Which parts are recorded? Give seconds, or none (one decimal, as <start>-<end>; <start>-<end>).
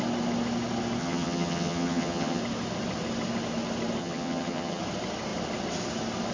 0.0-1.0; 2.4-4.0; 4.8-6.3